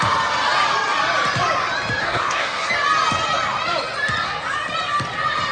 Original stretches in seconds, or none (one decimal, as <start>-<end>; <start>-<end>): 0.0-2.0; 2.7-5.5